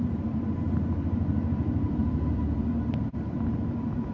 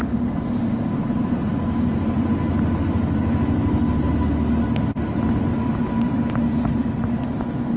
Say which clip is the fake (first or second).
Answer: first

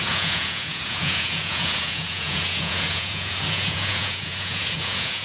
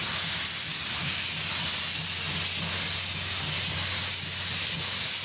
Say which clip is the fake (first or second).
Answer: first